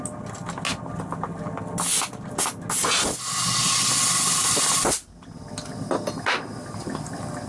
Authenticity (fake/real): real